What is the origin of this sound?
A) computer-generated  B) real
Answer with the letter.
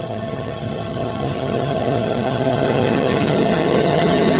A